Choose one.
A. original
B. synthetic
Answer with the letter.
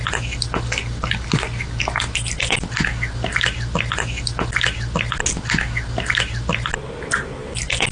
A